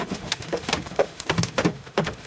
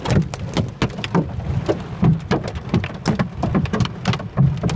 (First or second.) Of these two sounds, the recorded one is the second